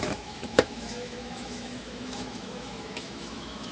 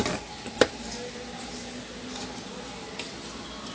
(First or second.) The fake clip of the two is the first